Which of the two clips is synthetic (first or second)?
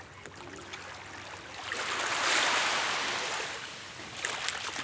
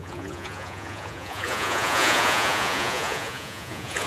second